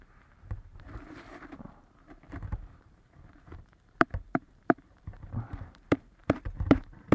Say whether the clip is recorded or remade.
remade